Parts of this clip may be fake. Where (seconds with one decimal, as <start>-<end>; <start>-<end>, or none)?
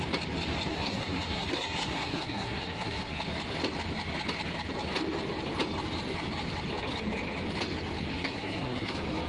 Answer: 0.7-3.2; 8.1-8.9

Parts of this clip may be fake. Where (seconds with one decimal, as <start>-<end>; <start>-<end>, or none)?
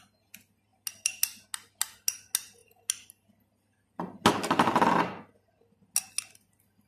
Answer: none